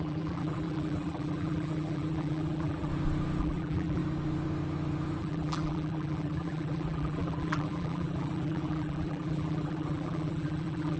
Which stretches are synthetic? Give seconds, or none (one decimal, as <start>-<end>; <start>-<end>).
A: 0.0-2.9; 3.4-4.0; 5.2-11.0